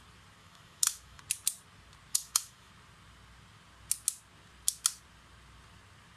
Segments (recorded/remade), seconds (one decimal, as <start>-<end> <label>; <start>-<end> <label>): 0.0-0.4 recorded; 0.4-1.2 remade; 1.2-2.1 recorded; 2.1-2.7 remade; 2.7-6.2 recorded